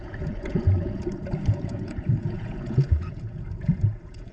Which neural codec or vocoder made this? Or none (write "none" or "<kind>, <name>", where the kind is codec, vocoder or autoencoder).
vocoder, Vocos